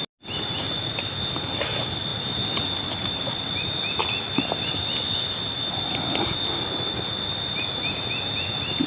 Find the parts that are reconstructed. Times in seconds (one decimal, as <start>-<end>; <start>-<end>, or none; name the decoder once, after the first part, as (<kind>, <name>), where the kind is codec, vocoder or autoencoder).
none